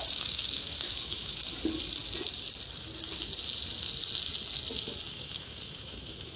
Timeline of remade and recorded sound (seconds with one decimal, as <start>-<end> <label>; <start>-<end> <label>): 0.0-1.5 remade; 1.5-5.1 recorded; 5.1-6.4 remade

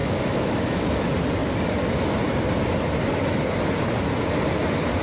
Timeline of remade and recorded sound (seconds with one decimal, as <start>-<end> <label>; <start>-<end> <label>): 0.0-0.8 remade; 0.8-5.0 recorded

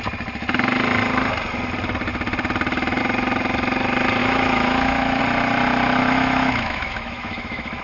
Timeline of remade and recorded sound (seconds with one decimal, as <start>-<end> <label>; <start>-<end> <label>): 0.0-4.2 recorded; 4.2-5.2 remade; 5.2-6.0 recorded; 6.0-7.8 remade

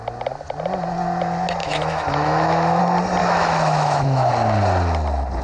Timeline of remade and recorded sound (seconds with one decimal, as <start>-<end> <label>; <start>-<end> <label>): 0.0-1.6 recorded; 1.6-2.8 remade; 2.8-3.2 recorded; 3.2-4.3 remade; 4.3-5.4 recorded

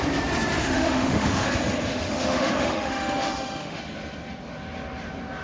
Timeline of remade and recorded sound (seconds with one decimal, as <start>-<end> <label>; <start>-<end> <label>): 0.0-0.6 recorded; 0.6-1.5 remade; 1.5-1.9 recorded; 1.9-3.8 remade; 3.8-5.4 recorded

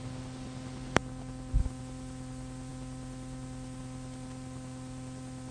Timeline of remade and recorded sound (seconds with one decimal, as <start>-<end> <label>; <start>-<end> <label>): 0.0-5.5 recorded

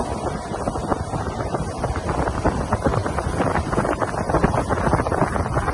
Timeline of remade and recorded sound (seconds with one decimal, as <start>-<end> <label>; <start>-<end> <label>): 0.0-5.7 recorded